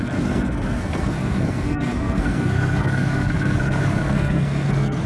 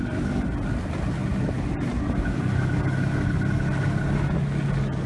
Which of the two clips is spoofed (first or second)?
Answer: first